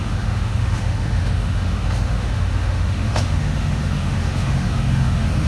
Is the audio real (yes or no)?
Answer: no